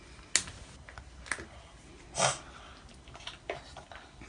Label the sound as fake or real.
real